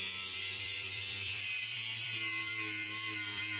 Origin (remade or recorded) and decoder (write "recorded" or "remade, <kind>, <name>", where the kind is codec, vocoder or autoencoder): remade, vocoder, BigVGAN v2